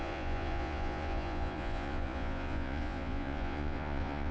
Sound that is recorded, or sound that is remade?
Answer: remade